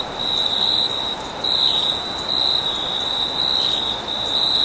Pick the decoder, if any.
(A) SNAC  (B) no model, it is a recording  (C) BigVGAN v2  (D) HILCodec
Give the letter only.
B